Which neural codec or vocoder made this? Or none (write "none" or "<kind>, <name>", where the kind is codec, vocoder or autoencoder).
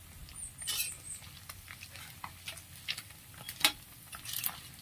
none